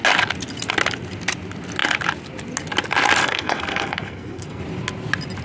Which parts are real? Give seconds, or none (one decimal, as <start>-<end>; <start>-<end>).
0.0-3.2; 4.6-5.4